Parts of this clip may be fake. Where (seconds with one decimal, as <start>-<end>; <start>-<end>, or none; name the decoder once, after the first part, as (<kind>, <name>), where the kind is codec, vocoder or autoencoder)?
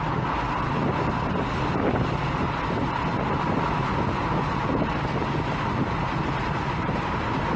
none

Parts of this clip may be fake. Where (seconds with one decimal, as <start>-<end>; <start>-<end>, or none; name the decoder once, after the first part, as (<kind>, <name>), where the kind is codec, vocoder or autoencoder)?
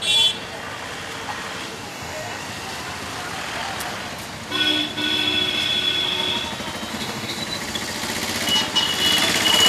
1.9-2.4 (codec, DAC); 6.9-7.4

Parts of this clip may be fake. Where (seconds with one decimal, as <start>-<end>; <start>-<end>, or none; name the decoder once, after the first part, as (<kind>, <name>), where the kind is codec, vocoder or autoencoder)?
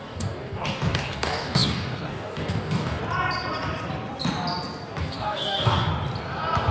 0.0-3.0 (codec, DAC); 5.0-5.9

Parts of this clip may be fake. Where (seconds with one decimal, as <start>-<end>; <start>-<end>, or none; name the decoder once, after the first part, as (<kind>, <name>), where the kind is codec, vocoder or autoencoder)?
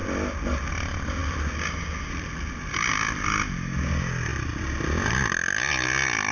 none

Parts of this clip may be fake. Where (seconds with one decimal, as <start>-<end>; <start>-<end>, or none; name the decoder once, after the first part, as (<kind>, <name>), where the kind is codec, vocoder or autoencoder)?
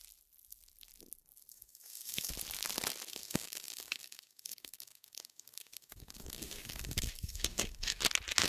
1.5-2.3 (codec, DAC); 3.1-8.0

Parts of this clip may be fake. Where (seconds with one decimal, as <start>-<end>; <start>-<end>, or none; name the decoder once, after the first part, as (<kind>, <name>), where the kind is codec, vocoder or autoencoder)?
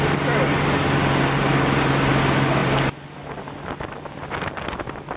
none